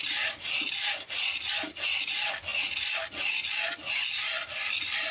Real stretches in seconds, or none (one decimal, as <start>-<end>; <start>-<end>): 0.0-5.1